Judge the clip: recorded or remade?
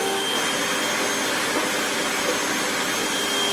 recorded